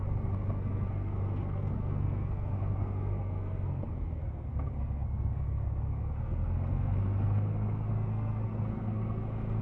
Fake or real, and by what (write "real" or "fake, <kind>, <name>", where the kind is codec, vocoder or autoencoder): fake, codec, SNAC